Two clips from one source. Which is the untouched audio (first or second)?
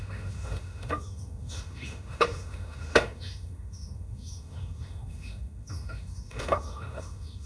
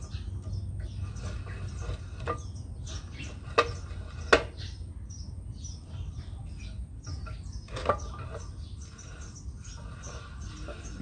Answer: second